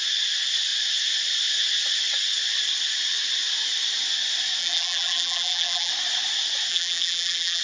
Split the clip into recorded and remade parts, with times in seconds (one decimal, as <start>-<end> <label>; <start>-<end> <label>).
0.0-4.6 recorded; 4.6-5.9 remade; 5.9-6.7 recorded; 6.7-7.6 remade